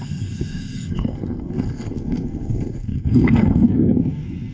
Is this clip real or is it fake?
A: fake